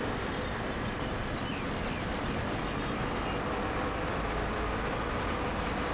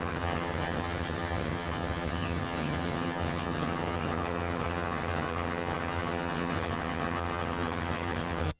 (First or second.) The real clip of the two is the first